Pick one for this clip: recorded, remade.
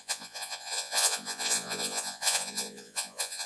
remade